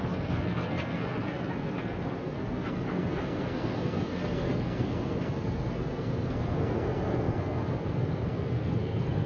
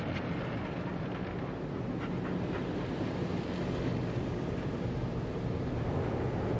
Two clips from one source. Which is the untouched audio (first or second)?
second